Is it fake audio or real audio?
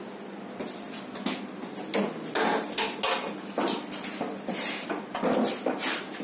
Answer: real